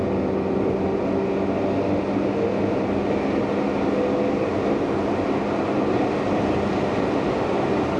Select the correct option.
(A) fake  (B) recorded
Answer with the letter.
B